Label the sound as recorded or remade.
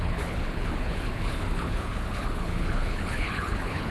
remade